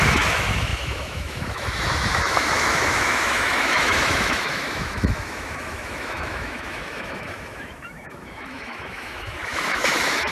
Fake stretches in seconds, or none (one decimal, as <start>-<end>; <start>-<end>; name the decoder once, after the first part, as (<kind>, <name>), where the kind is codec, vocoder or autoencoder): 0.0-10.3 (autoencoder, DAC-VAE)